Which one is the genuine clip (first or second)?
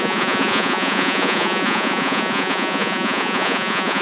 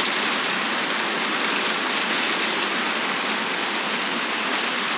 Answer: second